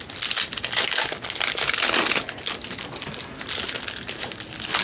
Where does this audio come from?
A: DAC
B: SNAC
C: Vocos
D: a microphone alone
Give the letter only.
D